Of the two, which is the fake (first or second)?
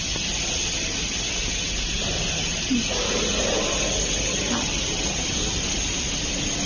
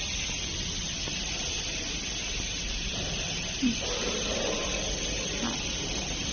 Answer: second